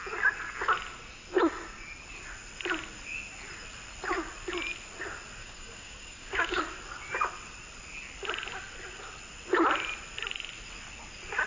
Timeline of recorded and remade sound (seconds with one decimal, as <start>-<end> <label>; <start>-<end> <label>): 0.0-5.4 recorded; 5.4-6.6 remade; 6.6-11.5 recorded